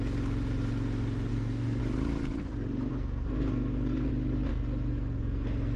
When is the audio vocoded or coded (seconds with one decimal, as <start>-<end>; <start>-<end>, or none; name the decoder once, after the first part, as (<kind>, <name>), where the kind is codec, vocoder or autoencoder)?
1.3-1.8 (codec, SNAC); 2.9-4.1; 4.5-5.8